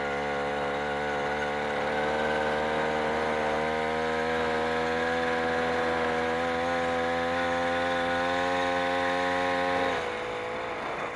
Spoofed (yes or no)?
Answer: no